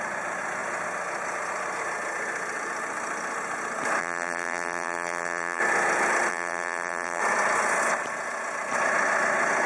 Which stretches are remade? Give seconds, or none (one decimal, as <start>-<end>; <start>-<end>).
4.0-5.6; 6.3-7.2